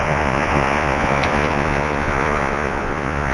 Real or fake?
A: fake